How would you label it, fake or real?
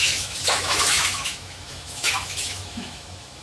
fake